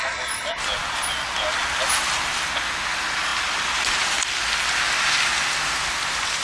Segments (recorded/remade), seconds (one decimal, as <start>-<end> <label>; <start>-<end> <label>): 0.0-6.4 recorded